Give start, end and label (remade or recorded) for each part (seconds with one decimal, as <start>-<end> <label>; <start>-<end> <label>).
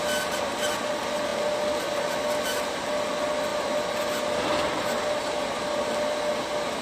0.0-6.8 recorded